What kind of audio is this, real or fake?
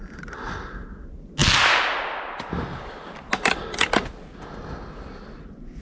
real